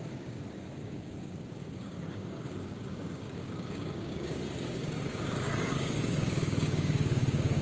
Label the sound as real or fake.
fake